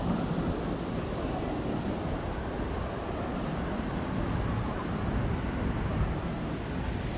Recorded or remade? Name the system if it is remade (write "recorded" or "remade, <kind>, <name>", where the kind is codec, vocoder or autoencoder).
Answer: recorded